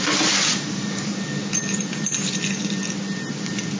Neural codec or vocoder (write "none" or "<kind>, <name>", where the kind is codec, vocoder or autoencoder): none